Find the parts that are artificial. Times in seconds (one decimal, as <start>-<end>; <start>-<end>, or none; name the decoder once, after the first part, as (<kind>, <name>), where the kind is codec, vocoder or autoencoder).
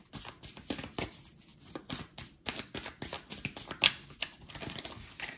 1.5-2.4 (vocoder, BigVGAN v2)